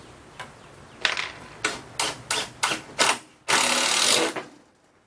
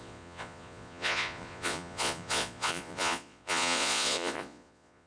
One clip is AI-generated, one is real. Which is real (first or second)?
first